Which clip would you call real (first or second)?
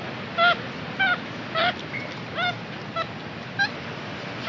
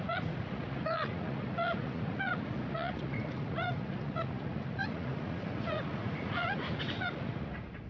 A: first